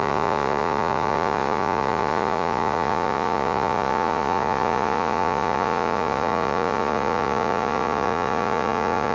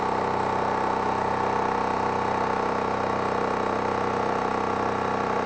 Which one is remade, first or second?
first